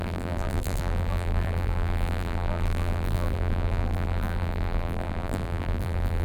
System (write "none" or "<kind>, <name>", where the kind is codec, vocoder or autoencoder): vocoder, BigVGAN v2